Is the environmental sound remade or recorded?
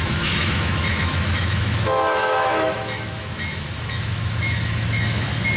remade